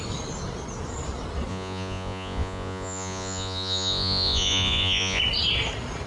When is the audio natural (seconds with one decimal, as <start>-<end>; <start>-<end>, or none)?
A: 0.0-1.5; 5.2-6.1